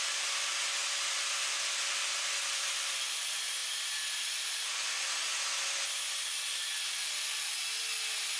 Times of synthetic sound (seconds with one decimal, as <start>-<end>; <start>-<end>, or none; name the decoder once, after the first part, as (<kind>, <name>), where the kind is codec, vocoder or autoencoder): none